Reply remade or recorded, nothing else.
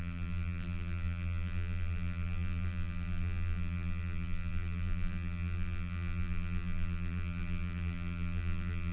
remade